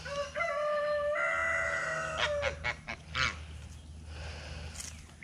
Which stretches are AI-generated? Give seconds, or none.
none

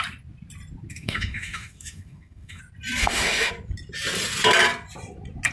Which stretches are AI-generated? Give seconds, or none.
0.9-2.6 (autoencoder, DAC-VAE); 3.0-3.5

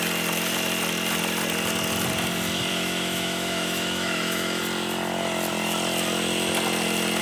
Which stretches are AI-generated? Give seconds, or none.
2.7-4.6 (autoencoder, DAC-VAE)

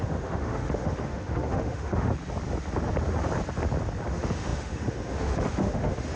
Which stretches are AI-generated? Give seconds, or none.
0.0-2.1 (autoencoder, DAC-VAE); 4.1-6.2